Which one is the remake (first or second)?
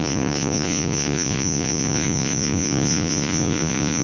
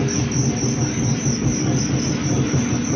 first